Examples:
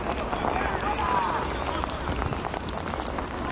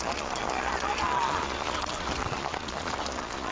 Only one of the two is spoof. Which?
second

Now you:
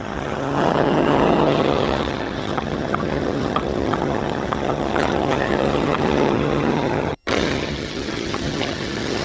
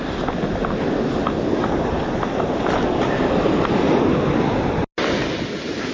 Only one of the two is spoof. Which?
first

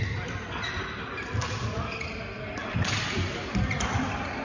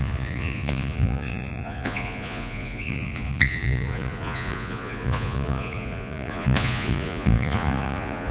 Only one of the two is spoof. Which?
second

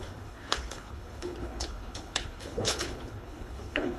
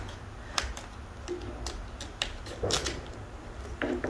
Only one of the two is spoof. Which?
first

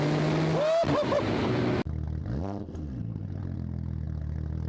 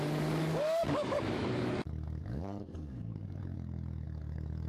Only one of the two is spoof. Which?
second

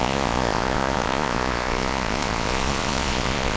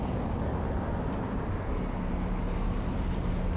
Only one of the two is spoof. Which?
first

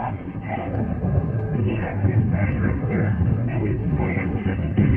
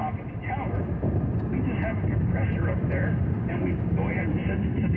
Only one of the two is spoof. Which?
first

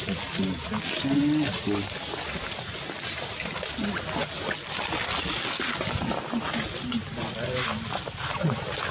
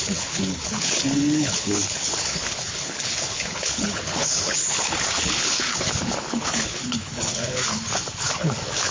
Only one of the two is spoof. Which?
second